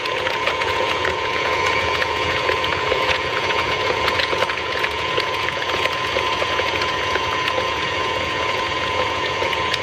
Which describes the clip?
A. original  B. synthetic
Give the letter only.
B